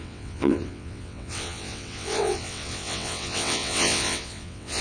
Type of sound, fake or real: fake